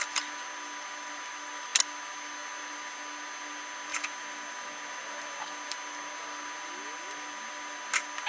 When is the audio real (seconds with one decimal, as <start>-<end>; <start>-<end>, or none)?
0.0-8.3